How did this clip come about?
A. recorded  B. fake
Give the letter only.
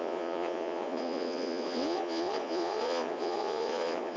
B